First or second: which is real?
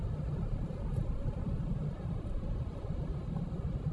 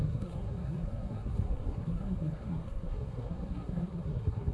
first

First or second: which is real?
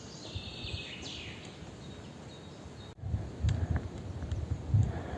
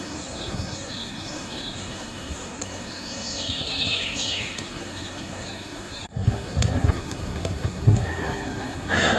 first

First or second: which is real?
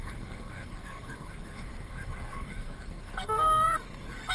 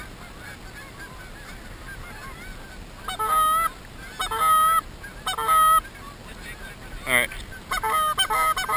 second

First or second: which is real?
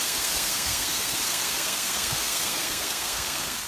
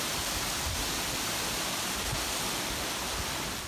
second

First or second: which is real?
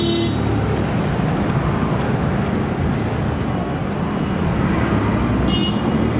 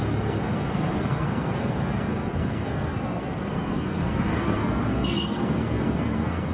first